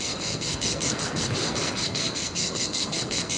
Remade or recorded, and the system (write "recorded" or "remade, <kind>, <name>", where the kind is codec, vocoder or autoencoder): remade, codec, SNAC